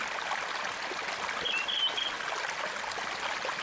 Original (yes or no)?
yes